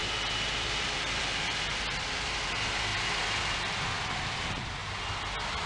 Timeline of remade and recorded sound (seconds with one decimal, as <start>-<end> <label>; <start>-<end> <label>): 0.0-5.7 recorded